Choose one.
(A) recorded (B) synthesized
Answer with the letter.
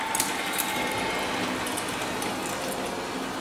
A